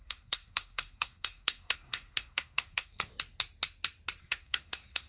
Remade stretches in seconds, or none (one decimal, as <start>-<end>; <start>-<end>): 0.0-3.1; 4.2-5.1